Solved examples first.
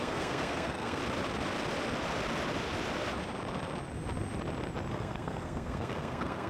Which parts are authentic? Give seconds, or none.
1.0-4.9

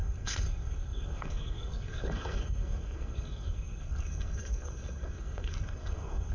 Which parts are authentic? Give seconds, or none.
none